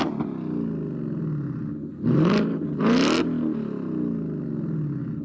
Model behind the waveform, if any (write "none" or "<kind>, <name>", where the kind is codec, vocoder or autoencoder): none